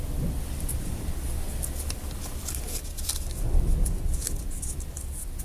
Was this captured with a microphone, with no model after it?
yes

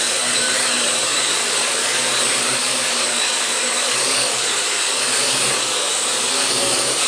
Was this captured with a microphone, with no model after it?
no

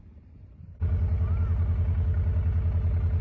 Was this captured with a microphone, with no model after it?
yes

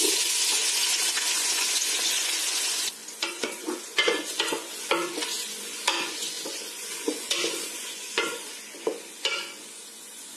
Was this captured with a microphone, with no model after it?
no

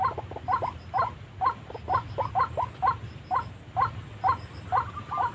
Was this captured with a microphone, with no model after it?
yes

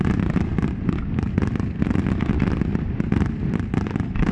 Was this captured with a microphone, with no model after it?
yes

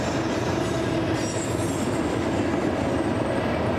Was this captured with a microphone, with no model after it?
yes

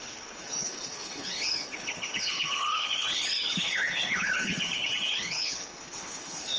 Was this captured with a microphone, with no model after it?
no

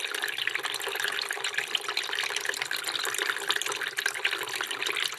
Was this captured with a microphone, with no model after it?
yes